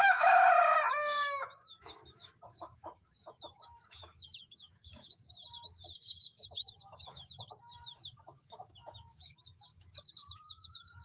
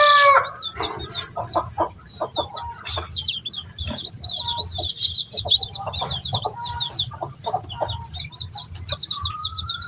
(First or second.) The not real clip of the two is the first